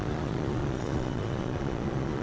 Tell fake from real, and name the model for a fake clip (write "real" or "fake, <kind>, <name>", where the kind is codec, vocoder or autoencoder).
fake, vocoder, Vocos